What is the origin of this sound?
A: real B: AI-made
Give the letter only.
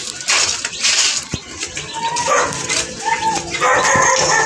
A